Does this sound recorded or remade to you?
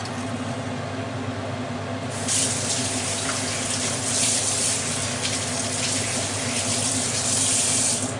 recorded